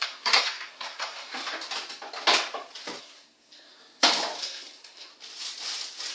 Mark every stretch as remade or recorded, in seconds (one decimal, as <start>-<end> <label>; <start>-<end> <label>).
0.0-1.3 remade; 1.3-3.0 recorded; 3.0-3.8 remade; 3.8-4.4 recorded; 4.4-5.1 remade; 5.1-6.1 recorded